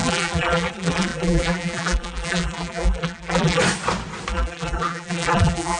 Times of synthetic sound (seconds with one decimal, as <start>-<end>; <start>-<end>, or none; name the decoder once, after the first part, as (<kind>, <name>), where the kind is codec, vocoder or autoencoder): 0.0-3.6 (vocoder, BigVGAN v2); 4.3-5.8